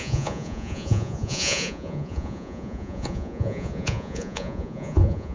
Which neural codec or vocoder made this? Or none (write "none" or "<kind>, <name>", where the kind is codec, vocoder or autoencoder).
vocoder, Vocos